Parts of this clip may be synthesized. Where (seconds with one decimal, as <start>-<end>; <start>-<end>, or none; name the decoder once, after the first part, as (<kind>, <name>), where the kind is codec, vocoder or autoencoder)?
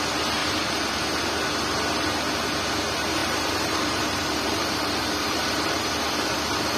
0.4-1.0 (vocoder, BigVGAN v2); 3.2-5.9